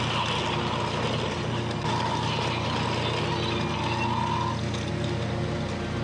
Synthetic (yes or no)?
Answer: no